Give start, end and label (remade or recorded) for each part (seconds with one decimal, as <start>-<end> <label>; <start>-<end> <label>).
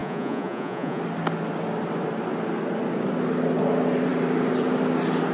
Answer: 0.0-1.0 remade; 1.0-5.3 recorded